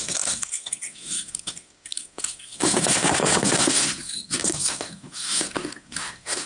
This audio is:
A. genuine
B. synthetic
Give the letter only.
B